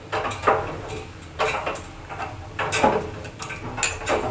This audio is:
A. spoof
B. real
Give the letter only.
B